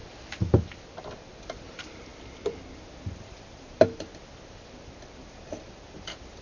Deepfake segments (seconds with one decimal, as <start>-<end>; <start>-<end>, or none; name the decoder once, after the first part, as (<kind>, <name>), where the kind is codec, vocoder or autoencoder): 1.7-2.1 (vocoder, BigVGAN v2); 3.0-6.4